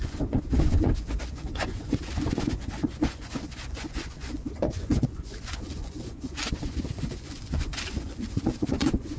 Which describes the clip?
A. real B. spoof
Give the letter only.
B